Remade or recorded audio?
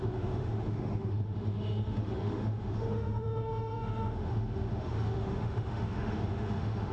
remade